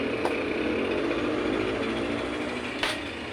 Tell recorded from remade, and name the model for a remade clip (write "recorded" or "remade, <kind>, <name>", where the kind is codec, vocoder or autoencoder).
recorded